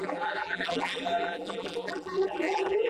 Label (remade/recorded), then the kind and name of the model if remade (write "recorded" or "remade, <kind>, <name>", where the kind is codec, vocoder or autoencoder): remade, vocoder, BigVGAN v2